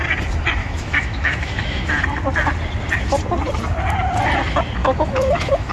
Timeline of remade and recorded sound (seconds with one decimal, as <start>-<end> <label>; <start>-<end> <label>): 0.0-0.6 recorded; 0.6-1.9 remade; 1.9-4.8 recorded; 4.8-5.7 remade